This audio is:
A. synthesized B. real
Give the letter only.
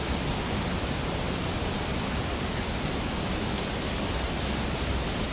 B